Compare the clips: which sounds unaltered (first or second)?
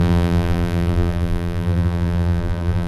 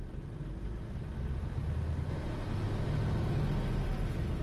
second